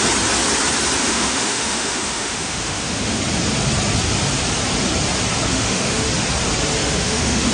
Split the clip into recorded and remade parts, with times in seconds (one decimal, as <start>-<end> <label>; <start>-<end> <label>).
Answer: 0.0-1.0 recorded; 1.0-3.2 remade; 3.2-5.5 recorded; 5.5-6.1 remade; 6.1-6.8 recorded; 6.8-7.5 remade